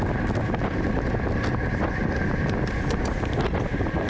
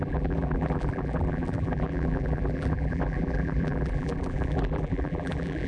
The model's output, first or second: second